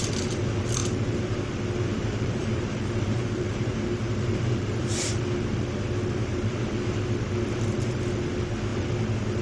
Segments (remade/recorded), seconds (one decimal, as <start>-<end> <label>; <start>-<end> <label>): 0.0-0.8 recorded; 0.8-1.3 remade; 1.3-1.9 recorded; 1.9-5.1 remade; 5.1-9.4 recorded